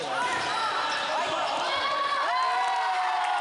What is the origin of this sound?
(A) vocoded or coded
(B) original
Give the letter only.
B